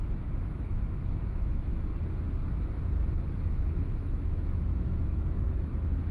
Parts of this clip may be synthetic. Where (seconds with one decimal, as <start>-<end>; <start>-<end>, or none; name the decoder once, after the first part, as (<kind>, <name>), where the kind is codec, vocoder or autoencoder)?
0.0-1.9 (autoencoder, DAC-VAE); 3.7-6.1